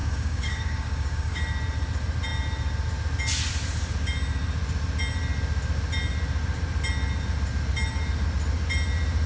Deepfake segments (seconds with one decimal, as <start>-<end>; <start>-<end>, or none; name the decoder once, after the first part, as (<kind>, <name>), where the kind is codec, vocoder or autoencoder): 0.0-1.4 (codec, DAC)